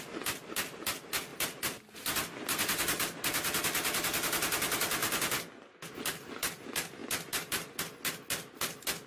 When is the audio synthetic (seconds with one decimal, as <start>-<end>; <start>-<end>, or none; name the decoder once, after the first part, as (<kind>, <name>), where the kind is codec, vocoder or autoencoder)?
none